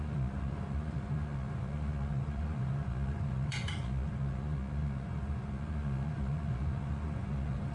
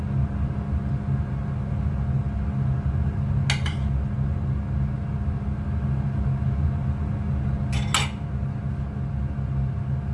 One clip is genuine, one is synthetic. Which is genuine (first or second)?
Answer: second